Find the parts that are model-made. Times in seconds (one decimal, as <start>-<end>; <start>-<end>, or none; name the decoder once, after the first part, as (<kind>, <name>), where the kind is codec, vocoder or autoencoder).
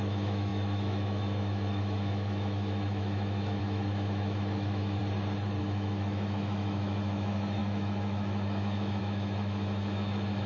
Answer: 0.0-5.0 (autoencoder, DAC-VAE); 5.6-10.5